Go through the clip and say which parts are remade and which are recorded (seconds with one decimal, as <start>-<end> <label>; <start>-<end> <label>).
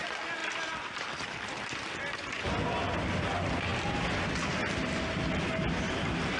0.0-0.4 recorded; 0.4-2.0 remade; 2.0-6.4 recorded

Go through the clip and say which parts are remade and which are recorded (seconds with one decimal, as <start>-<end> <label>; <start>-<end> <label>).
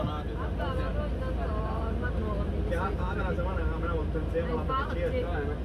0.0-5.6 recorded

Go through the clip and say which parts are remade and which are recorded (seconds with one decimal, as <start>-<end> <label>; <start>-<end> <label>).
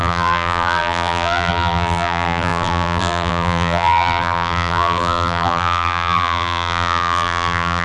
0.0-7.8 remade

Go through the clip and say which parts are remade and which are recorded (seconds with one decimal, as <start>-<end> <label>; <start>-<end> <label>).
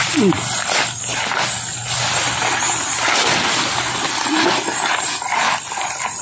0.0-6.2 recorded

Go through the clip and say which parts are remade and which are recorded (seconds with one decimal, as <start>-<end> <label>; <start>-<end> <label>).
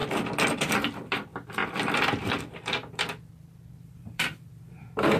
0.0-1.3 recorded; 1.3-2.4 remade; 2.4-2.8 recorded; 2.8-5.2 remade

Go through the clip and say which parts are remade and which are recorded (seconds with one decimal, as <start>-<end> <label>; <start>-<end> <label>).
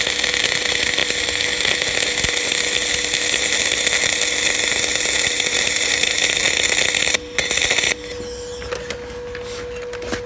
0.0-5.5 recorded; 5.5-6.1 remade; 6.1-10.3 recorded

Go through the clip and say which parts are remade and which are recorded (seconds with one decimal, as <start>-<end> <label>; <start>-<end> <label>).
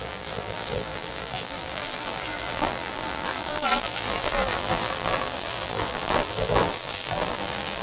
0.0-7.8 remade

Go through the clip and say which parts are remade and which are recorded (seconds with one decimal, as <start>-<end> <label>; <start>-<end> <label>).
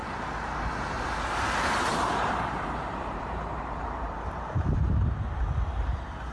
0.0-1.9 recorded; 1.9-5.4 remade; 5.4-6.3 recorded